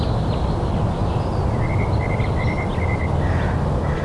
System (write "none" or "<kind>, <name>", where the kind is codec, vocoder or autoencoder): none